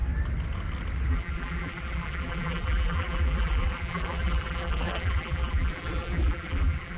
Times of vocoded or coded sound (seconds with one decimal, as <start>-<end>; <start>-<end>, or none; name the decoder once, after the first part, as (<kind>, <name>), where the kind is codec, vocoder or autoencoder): 1.1-7.0 (vocoder, BigVGAN v2)